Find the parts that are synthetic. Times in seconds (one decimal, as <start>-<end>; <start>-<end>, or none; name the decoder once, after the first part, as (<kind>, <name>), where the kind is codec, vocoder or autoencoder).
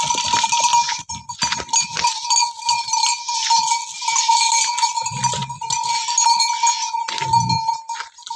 none